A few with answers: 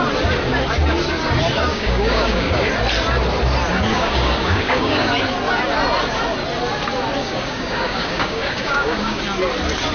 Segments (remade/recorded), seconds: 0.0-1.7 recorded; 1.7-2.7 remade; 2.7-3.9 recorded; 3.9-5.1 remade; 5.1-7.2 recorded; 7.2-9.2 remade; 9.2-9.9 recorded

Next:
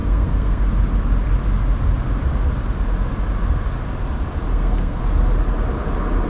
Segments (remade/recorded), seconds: 0.0-0.7 remade; 0.7-4.5 recorded; 4.5-5.0 remade; 5.0-6.3 recorded

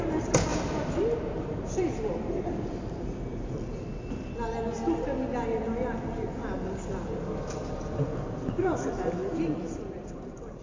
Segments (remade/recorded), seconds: 0.0-3.9 remade; 3.9-8.0 recorded; 8.0-9.2 remade; 9.2-9.8 recorded; 9.8-10.6 remade

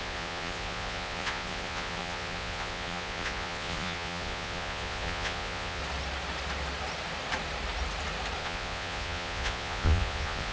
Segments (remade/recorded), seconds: 0.0-5.8 remade; 5.8-8.4 recorded; 8.4-10.5 remade

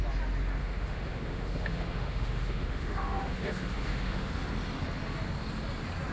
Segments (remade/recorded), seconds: 0.0-0.6 recorded; 0.6-4.3 remade; 4.3-6.1 recorded